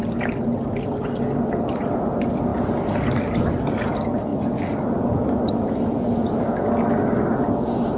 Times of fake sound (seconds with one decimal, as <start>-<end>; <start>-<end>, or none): none